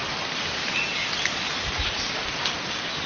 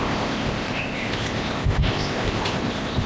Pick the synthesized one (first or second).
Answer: second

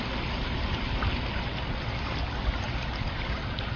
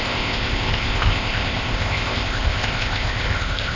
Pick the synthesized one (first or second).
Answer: second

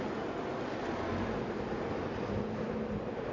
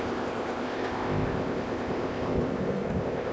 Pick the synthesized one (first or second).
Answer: second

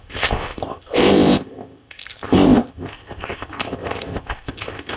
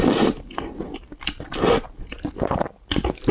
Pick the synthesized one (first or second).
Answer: first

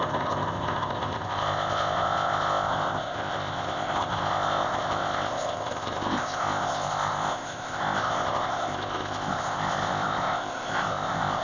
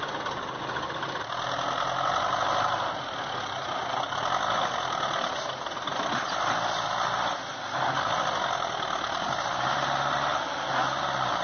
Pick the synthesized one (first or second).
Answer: first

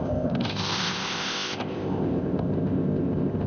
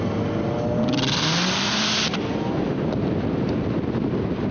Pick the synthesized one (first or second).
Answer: first